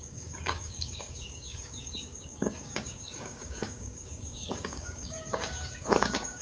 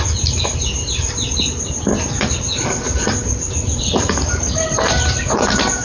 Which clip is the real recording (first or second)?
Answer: second